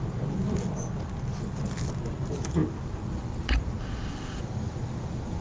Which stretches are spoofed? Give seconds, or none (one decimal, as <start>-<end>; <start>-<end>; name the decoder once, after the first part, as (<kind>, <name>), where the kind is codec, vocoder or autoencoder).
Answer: 3.8-4.4 (codec, ZipCodec)

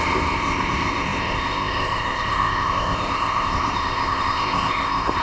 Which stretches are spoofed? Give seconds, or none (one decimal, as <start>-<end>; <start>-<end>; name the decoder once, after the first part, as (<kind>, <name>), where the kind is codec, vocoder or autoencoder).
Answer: 0.0-5.2 (codec, ZipCodec)